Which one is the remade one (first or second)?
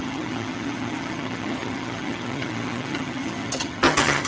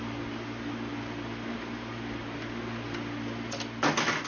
first